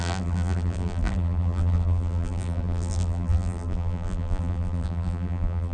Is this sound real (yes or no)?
no